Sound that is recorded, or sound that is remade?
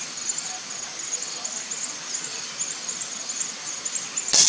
recorded